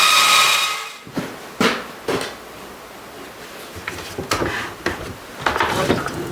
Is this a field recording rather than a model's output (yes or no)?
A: yes